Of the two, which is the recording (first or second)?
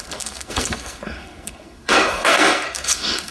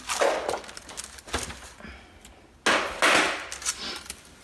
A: second